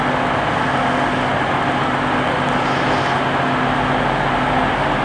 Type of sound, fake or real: real